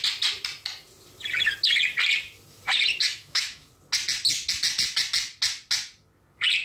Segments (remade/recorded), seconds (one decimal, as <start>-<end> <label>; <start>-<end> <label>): 0.0-3.1 recorded; 3.1-3.7 remade; 3.7-6.6 recorded